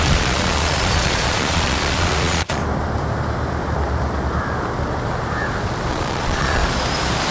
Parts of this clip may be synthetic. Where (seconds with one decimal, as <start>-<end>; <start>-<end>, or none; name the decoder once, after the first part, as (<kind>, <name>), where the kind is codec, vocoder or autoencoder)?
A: 0.0-2.6 (vocoder, Vocos); 5.9-6.6